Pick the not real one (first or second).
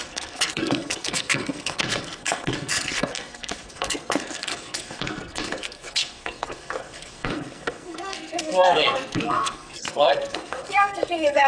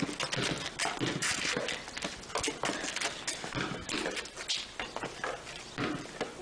first